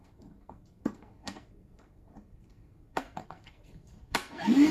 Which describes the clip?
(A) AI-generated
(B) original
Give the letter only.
A